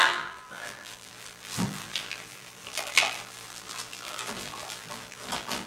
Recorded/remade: remade